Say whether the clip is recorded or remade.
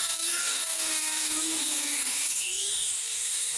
remade